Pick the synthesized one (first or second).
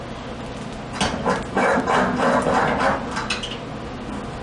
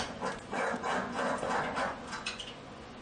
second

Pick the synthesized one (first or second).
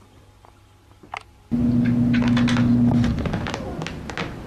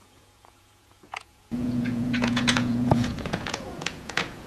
second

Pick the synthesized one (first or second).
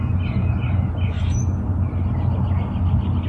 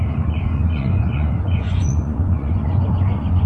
second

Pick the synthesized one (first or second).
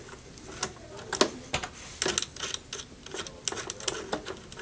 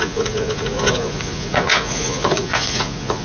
second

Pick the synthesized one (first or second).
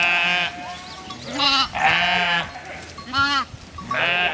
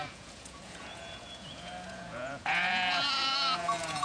second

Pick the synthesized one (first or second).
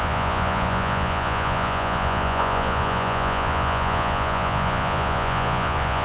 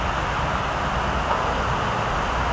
first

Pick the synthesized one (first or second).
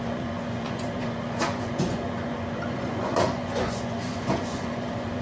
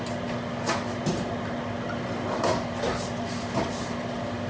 first